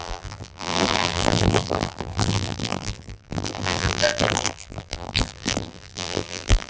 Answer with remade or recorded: remade